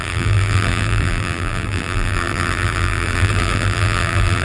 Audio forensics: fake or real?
fake